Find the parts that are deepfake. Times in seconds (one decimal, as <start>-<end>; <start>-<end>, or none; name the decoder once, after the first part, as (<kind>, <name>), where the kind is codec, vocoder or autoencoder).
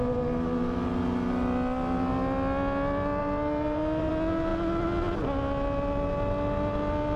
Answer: 3.2-4.1 (vocoder, BigVGAN v2)